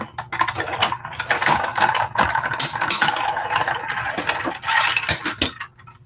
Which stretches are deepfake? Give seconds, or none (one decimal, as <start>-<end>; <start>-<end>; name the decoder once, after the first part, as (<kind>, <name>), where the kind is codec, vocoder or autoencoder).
none